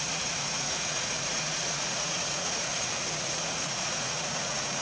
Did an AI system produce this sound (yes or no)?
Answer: yes